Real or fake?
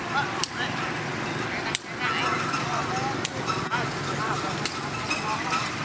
real